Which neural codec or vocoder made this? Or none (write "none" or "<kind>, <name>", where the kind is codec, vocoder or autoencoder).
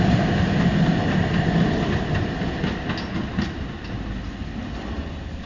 none